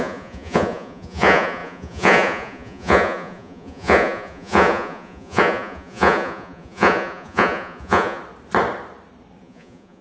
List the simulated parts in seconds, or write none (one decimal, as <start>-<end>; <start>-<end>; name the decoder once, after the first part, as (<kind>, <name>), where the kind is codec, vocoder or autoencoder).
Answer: 0.0-8.2 (vocoder, Vocos); 9.4-10.0

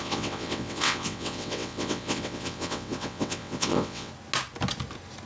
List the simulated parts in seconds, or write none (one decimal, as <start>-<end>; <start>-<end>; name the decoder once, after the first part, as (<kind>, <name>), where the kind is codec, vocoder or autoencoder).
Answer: 0.0-4.1 (vocoder, WaveNeXt)

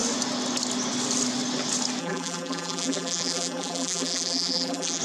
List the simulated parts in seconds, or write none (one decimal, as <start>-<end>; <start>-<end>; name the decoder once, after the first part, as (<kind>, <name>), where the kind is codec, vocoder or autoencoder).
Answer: 2.0-5.0 (vocoder, BigVGAN v2)